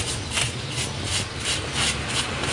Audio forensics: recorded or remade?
recorded